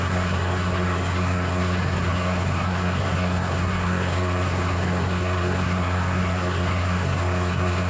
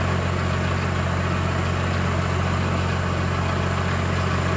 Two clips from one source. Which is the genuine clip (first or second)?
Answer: second